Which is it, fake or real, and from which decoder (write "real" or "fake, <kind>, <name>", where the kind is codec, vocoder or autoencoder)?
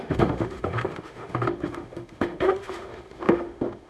fake, autoencoder, DAC-VAE